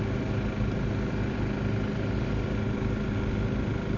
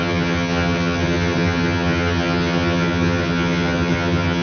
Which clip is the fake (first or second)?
second